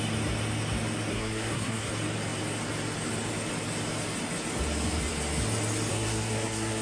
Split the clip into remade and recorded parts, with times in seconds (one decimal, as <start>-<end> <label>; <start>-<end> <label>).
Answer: 0.0-1.1 recorded; 1.1-1.9 remade; 1.9-5.9 recorded; 5.9-6.8 remade